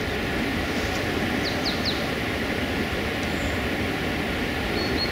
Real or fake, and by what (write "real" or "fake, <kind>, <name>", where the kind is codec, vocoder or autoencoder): real